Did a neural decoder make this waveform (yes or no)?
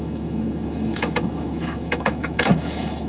yes